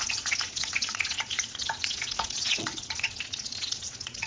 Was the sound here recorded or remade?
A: remade